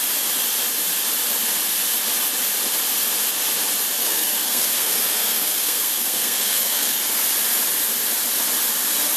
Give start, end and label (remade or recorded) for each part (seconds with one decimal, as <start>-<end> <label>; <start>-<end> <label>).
0.0-4.0 recorded; 4.0-7.0 remade; 7.0-9.2 recorded